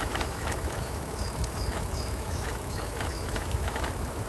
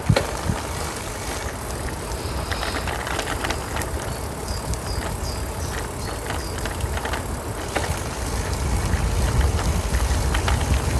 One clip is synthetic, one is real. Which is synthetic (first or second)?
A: first